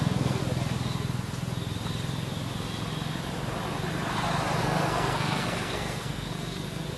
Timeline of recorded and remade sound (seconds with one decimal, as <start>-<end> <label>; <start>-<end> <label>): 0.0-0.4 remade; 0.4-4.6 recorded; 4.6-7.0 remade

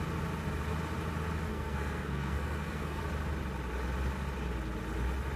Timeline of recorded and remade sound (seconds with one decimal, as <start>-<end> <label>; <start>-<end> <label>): 0.0-1.5 recorded; 1.5-3.0 remade; 3.0-5.4 recorded

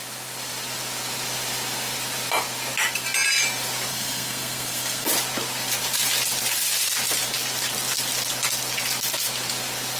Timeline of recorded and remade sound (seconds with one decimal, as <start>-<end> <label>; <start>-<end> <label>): 0.0-3.9 recorded; 3.9-5.1 remade; 5.1-10.0 recorded

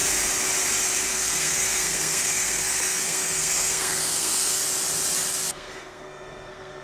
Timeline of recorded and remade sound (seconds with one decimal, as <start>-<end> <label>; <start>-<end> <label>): 0.0-1.1 recorded; 1.1-4.6 remade; 4.6-5.5 recorded; 5.5-6.8 remade

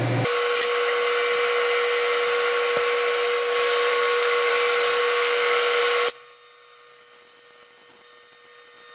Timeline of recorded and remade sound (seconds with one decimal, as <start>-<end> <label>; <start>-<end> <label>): 0.0-3.9 recorded; 3.9-4.5 remade; 4.5-5.0 recorded; 5.0-5.8 remade; 5.8-8.9 recorded